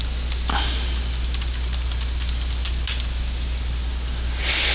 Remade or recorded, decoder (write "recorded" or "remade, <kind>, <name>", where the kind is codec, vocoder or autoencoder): recorded